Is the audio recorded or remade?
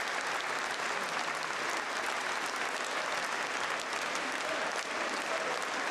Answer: recorded